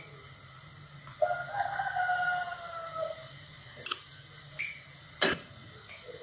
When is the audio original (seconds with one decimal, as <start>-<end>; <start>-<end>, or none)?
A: 0.0-6.2